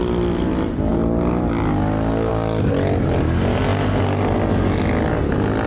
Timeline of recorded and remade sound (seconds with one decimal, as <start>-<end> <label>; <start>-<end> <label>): 0.0-5.7 recorded